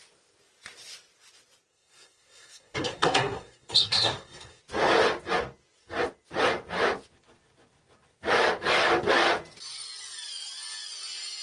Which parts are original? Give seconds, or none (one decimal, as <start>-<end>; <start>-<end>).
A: 0.0-1.7; 4.6-11.4